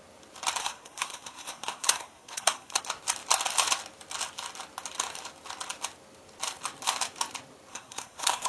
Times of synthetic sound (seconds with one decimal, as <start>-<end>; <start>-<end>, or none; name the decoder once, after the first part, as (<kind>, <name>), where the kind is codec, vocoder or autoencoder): 0.6-2.8 (codec, SNAC); 7.7-8.5